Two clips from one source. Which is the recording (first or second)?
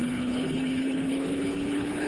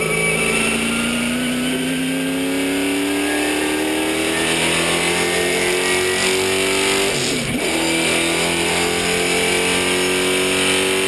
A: second